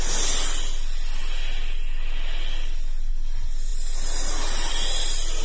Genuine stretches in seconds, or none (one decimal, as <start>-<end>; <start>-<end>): 0.0-5.4